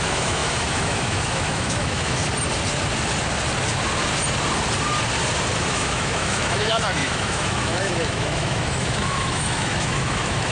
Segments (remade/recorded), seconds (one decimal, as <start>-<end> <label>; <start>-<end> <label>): 0.0-2.2 remade; 2.2-5.7 recorded; 5.7-10.5 remade